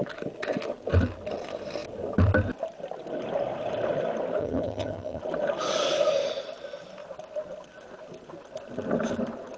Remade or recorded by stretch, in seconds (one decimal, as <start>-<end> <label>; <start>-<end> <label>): 0.0-4.4 recorded; 4.4-5.2 remade; 5.2-9.6 recorded